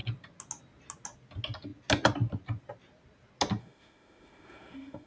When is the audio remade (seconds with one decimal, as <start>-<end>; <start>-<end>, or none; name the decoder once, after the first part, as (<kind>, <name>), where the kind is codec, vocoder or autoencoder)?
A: 3.6-5.1 (autoencoder, DAC-VAE)